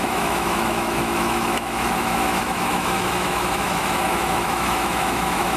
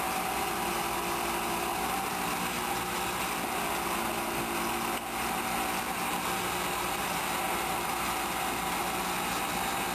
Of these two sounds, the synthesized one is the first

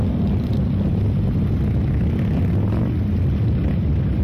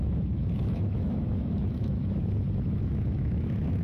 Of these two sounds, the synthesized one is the second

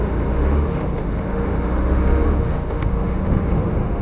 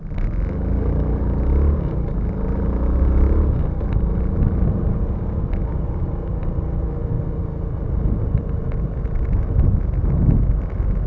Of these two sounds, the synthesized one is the first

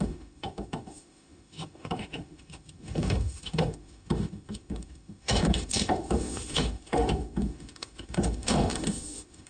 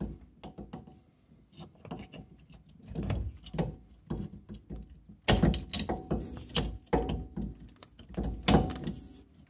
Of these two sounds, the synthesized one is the first